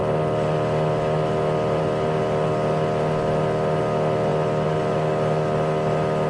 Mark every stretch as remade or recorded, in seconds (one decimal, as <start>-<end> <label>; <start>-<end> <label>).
0.0-6.3 recorded

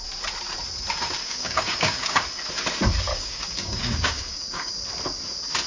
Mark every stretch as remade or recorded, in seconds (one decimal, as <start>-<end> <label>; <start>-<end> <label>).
0.0-1.2 recorded; 1.2-2.2 remade; 2.2-3.1 recorded; 3.1-4.7 remade; 4.7-5.7 recorded

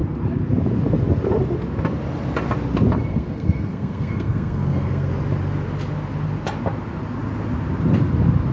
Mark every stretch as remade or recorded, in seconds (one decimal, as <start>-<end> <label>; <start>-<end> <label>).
0.0-3.1 recorded; 3.1-5.1 remade; 5.1-8.5 recorded